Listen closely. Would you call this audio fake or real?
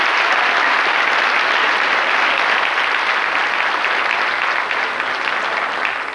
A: real